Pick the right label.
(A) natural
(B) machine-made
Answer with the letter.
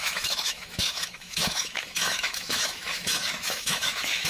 B